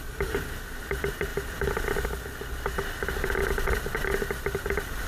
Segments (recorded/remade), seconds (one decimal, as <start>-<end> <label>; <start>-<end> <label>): 0.0-1.3 remade; 1.3-2.5 recorded; 2.5-5.1 remade